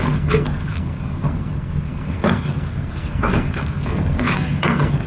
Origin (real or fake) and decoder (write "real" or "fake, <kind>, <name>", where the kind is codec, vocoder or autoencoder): fake, codec, SNAC